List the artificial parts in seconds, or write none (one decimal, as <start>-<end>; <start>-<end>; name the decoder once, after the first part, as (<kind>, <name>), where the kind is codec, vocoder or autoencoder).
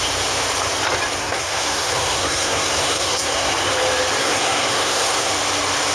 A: 1.2-3.5 (codec, SNAC); 4.2-5.3